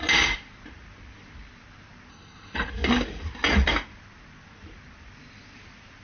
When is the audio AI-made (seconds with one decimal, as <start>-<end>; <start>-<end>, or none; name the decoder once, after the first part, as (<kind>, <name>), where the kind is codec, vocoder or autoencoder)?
2.1-2.7 (codec, HILCodec)